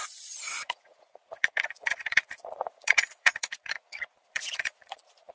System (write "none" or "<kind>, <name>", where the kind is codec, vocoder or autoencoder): vocoder, Vocos